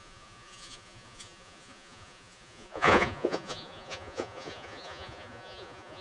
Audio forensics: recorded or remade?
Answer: remade